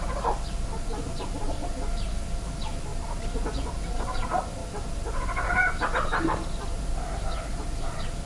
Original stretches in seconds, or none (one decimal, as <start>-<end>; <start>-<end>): 0.0-8.3